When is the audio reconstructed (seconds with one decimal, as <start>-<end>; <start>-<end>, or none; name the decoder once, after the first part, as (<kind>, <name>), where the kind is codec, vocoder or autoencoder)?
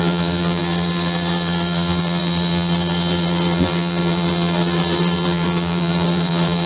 0.0-6.7 (vocoder, BigVGAN v2)